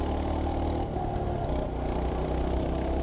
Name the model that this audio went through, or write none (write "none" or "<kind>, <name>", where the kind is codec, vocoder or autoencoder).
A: none